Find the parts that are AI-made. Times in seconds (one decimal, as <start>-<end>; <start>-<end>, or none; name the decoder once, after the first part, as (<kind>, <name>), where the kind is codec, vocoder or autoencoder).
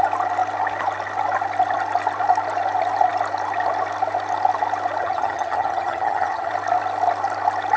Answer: 5.0-6.5 (vocoder, HiFi-GAN)